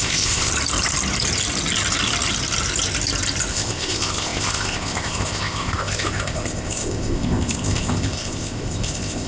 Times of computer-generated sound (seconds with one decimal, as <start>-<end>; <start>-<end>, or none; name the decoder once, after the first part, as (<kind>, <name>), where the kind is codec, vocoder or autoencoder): 0.0-0.5 (codec, ZipCodec); 3.5-9.3